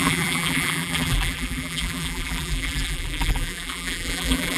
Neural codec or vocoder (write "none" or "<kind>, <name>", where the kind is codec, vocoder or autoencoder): vocoder, BigVGAN v2